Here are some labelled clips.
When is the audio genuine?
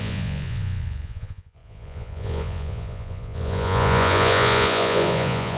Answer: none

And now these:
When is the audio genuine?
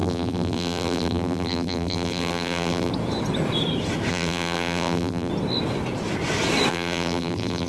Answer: 2.9-4.1; 5.3-6.7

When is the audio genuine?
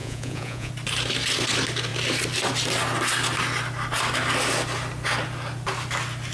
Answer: 0.7-6.3